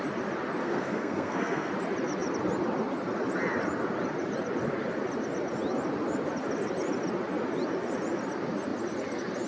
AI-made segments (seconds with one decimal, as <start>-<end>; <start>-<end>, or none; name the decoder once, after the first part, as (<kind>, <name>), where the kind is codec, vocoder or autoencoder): 0.6-1.7 (codec, SNAC)